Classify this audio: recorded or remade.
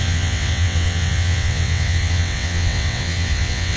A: remade